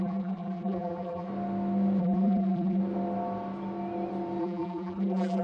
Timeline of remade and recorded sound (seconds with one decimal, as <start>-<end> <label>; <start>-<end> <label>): 0.0-1.3 remade; 1.3-2.0 recorded; 2.0-2.8 remade; 2.8-4.4 recorded; 4.4-5.4 remade